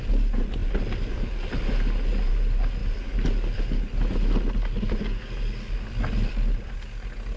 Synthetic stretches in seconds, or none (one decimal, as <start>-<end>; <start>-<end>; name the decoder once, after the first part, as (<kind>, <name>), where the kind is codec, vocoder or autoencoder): none